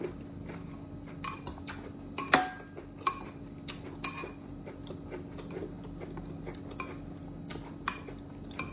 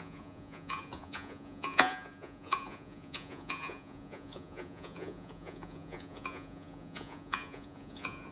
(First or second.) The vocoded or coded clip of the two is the second